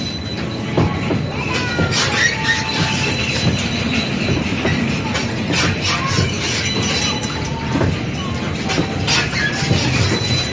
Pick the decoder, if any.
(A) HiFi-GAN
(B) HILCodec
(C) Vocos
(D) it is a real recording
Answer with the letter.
D